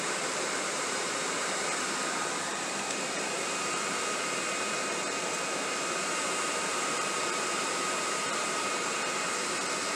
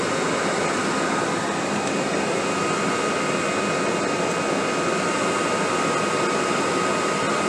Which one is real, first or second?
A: second